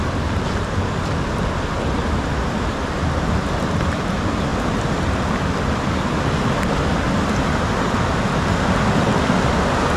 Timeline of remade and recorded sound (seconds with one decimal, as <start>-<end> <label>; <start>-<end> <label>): 0.0-10.0 recorded